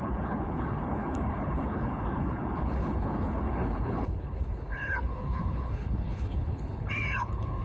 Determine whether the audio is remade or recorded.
remade